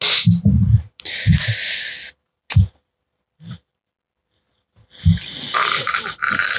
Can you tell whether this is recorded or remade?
recorded